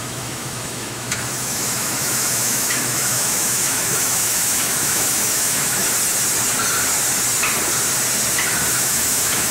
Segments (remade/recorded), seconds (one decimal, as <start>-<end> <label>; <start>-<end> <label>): 0.0-5.8 remade; 5.8-8.7 recorded; 8.7-9.5 remade